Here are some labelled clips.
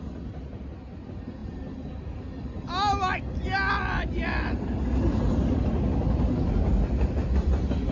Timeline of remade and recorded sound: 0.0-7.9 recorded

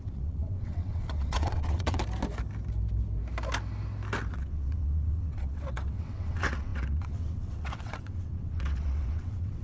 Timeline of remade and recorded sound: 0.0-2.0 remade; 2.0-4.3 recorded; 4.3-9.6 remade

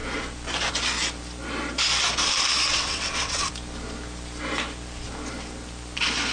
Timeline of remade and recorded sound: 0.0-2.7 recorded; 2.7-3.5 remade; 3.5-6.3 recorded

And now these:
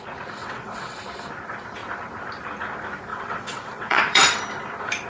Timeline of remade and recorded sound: 0.0-0.4 recorded; 0.4-1.0 remade; 1.0-3.1 recorded; 3.1-4.4 remade; 4.4-5.1 recorded

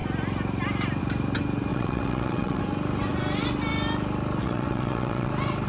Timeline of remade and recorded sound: 0.0-1.7 recorded; 1.7-2.6 remade; 2.6-4.4 recorded; 4.4-5.3 remade; 5.3-5.7 recorded

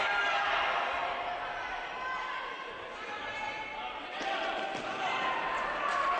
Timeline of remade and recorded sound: 0.0-4.0 recorded; 4.0-4.6 remade; 4.6-6.2 recorded

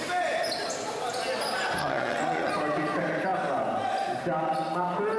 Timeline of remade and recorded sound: 0.0-1.8 recorded; 1.8-2.5 remade; 2.5-5.2 recorded

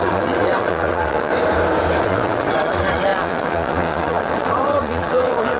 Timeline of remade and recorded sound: 0.0-1.3 remade; 1.3-2.0 recorded; 2.0-5.6 remade